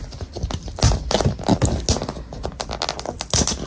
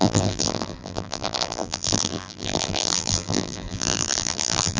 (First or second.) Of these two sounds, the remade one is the second